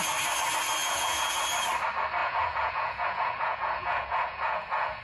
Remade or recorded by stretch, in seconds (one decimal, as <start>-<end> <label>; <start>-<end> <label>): 0.0-0.8 recorded; 0.8-1.4 remade; 1.4-2.2 recorded; 2.2-5.0 remade